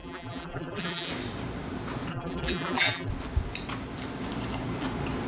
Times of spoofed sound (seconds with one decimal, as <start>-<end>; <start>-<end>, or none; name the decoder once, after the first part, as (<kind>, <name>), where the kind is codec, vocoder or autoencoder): 0.0-1.1 (vocoder, BigVGAN v2); 2.1-3.1